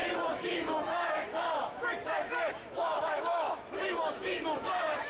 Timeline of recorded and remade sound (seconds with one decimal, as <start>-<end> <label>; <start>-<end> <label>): 0.0-5.1 remade